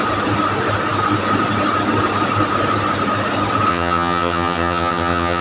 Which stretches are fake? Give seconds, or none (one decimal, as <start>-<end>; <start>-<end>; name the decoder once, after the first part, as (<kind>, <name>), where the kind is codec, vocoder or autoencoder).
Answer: 3.7-5.4 (vocoder, HiFi-GAN)